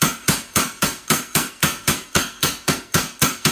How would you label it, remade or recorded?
remade